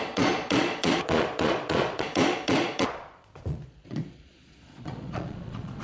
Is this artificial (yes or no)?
yes